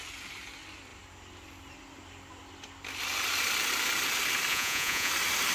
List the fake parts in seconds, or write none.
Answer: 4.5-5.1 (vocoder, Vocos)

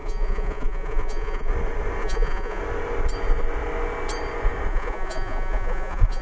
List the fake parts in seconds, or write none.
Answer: 0.0-1.5 (vocoder, Vocos); 2.0-2.6; 4.7-6.2

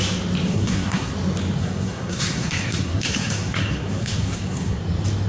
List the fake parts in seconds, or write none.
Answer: 0.5-1.1 (codec, SNAC); 1.6-4.8

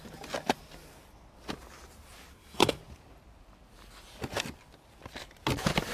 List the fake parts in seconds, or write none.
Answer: 2.3-2.8 (codec, SNAC)

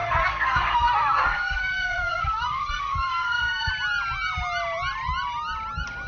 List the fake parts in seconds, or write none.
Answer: 0.0-3.7 (codec, SNAC)

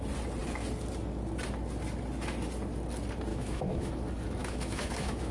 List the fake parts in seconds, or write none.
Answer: 3.3-3.9 (autoencoder, DAC-VAE); 4.4-5.3